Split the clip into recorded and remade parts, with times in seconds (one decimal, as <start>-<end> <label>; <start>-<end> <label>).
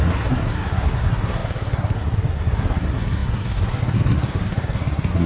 0.0-5.3 remade